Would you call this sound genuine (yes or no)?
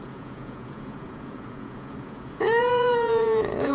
no